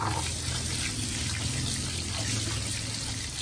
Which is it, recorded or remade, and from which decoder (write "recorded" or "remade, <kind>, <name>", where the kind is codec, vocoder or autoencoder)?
recorded